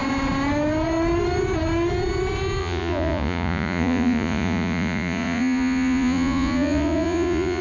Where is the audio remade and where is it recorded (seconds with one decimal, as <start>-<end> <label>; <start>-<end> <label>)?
0.0-2.6 recorded; 2.6-7.6 remade